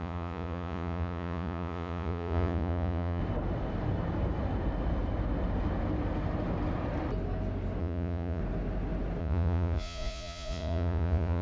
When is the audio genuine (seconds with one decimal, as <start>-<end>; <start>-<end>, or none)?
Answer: 3.2-7.8; 8.4-9.2